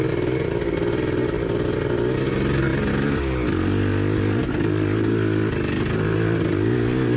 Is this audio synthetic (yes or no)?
no